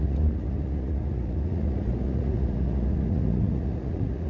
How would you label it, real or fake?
fake